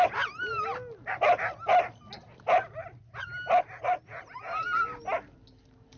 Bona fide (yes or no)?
yes